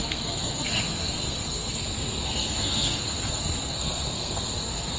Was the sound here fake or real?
fake